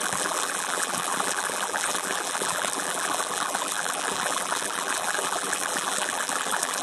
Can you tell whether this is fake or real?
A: fake